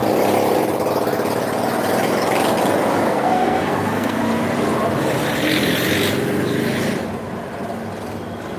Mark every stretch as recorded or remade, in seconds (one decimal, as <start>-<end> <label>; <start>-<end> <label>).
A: 0.0-3.1 recorded; 3.1-4.2 remade; 4.2-8.6 recorded